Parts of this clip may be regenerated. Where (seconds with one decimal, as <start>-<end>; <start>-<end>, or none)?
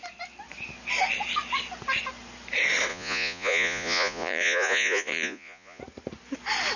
2.9-5.8